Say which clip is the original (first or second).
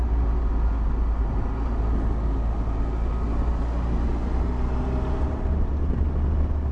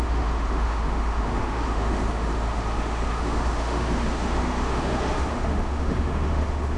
first